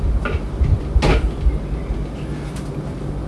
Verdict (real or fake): real